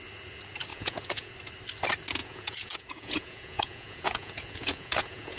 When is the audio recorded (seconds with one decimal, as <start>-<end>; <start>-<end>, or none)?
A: 0.0-0.7; 1.3-2.2